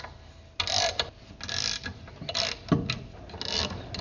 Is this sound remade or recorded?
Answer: recorded